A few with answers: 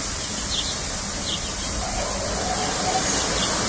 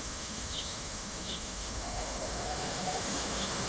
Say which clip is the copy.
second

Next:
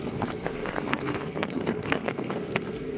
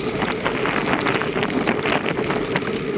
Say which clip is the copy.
first